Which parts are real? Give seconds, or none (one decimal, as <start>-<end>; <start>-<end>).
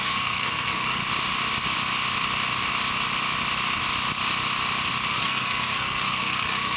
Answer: 1.0-5.1